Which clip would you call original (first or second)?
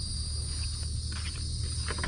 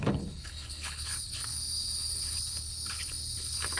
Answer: first